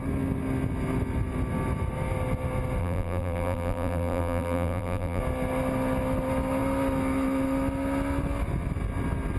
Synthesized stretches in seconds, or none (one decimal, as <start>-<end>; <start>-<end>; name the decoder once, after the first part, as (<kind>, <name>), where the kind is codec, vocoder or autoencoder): 2.8-5.2 (vocoder, BigVGAN v2)